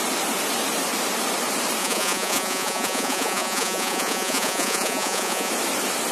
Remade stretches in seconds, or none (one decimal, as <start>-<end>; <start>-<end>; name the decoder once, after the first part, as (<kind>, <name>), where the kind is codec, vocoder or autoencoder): 1.8-5.5 (vocoder, Vocos)